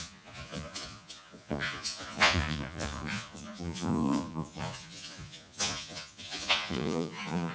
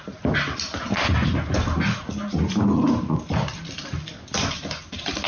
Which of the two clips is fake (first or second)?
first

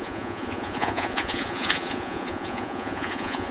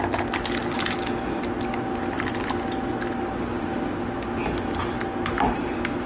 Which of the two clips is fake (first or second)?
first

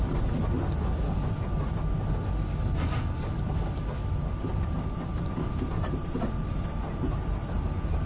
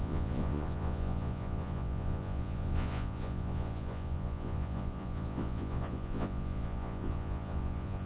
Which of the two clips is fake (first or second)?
second